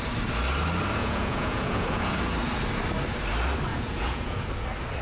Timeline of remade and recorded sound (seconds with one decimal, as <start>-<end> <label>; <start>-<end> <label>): 0.0-1.0 recorded; 1.0-2.2 remade; 2.2-3.7 recorded; 3.7-4.5 remade; 4.5-5.0 recorded